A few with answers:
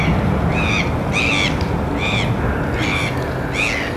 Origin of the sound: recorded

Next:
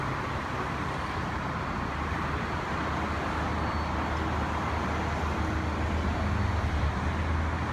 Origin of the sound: recorded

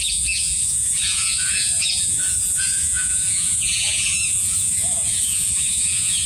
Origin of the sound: remade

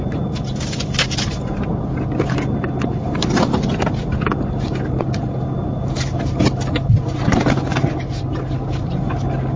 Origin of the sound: recorded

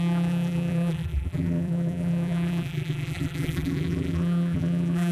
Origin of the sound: remade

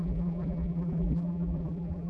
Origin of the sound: remade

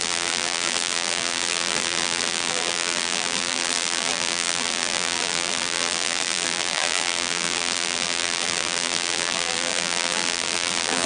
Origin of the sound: remade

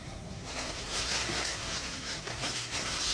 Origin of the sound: remade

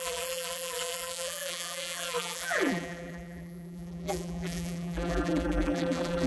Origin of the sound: remade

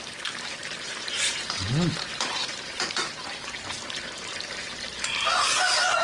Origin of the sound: remade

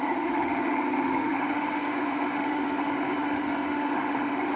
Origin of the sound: remade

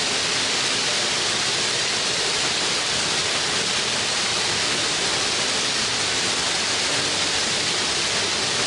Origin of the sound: remade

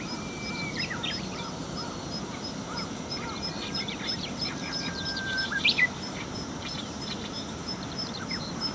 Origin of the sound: remade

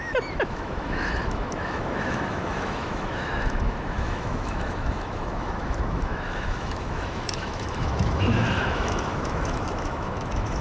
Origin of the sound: remade